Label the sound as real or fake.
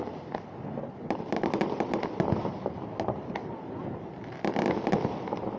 real